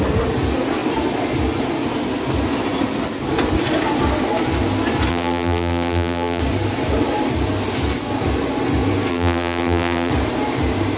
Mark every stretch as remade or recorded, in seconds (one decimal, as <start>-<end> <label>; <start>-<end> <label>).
0.0-5.1 recorded; 5.1-6.4 remade; 6.4-9.1 recorded; 9.1-10.1 remade; 10.1-11.0 recorded